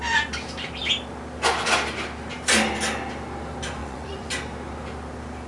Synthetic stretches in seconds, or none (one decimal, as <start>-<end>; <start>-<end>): 3.8-4.3